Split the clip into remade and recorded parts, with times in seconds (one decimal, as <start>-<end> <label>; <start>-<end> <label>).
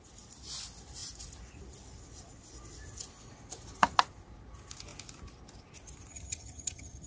0.0-6.1 recorded; 6.1-7.1 remade